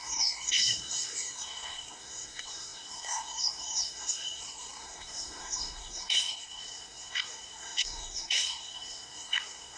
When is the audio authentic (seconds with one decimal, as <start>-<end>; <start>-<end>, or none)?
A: none